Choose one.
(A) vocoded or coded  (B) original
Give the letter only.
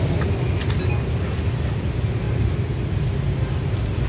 B